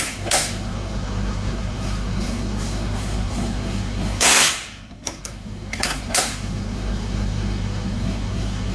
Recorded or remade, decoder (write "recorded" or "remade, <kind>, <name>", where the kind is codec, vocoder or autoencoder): remade, codec, SNAC